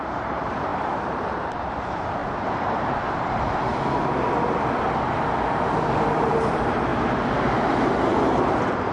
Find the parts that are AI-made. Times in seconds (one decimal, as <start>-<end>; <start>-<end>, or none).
0.0-3.7; 6.5-6.9; 7.6-8.9